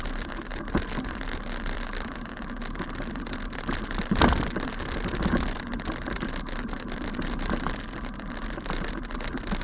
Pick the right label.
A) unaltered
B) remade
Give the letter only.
A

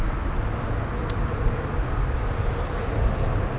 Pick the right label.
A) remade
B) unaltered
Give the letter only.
B